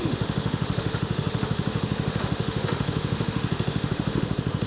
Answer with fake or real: fake